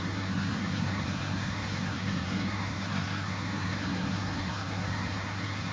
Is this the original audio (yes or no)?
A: no